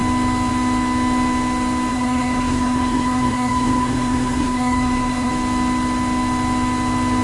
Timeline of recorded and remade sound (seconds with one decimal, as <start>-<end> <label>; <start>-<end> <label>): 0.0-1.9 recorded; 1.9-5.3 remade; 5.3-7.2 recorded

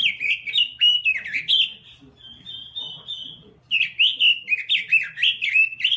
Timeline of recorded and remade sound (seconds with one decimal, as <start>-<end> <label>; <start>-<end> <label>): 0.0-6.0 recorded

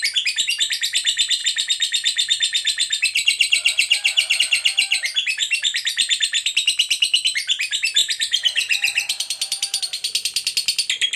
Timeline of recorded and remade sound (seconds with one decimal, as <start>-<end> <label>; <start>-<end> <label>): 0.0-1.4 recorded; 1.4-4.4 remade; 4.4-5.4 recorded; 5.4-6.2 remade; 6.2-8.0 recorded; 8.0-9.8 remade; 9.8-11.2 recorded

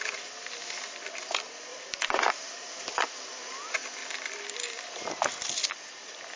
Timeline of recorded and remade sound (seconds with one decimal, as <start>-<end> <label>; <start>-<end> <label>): 0.0-1.7 recorded; 1.7-2.3 remade; 2.3-4.0 recorded; 4.0-6.4 remade

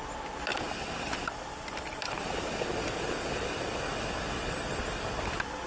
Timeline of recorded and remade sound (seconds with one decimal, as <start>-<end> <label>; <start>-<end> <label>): 0.0-0.5 recorded; 0.5-2.2 remade; 2.2-5.7 recorded